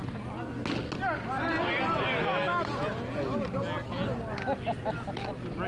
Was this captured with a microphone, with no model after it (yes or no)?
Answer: yes